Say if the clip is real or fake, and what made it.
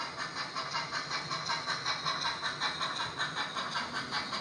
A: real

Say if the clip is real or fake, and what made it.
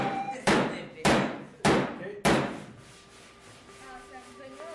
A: real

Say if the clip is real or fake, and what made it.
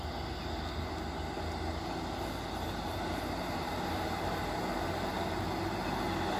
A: real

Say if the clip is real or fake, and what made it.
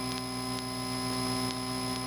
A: real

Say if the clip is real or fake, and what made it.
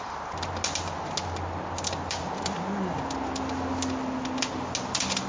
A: real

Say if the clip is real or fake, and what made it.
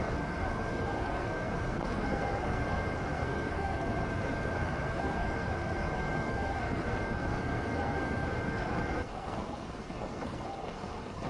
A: fake, codec, SNAC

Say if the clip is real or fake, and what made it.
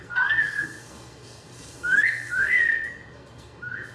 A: fake, codec, SNAC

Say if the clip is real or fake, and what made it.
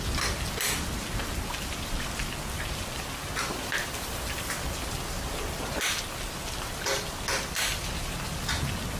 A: real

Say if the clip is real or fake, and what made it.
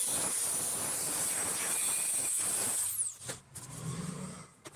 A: real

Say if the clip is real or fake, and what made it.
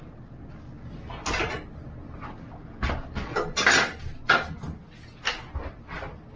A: real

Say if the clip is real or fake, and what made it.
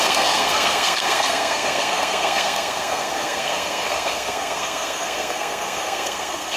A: fake, codec, SNAC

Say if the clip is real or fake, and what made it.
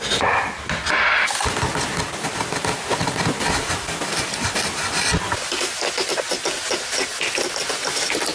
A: real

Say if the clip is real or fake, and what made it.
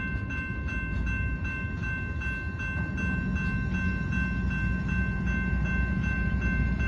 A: real